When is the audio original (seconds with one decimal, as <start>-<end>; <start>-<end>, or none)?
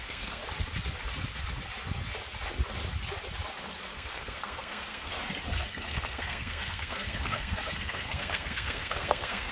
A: 0.4-3.8; 5.1-5.7